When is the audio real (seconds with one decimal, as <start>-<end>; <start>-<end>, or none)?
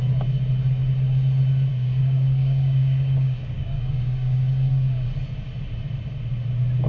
0.0-1.7; 5.1-6.9